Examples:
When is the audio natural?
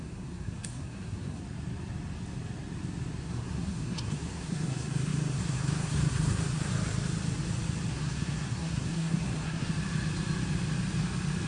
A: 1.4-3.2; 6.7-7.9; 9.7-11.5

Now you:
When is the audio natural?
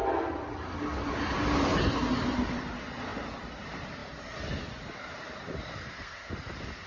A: 0.0-5.8; 6.3-6.9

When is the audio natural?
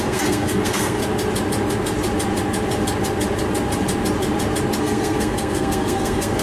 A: 1.0-4.8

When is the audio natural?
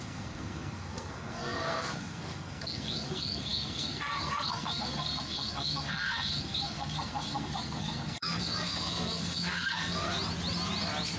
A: 10.1-11.2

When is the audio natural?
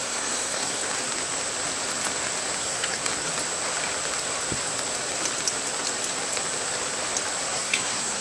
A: 0.8-2.6; 3.1-7.4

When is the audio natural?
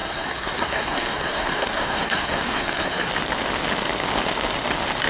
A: 3.1-5.1